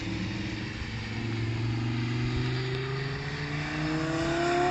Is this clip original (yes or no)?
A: yes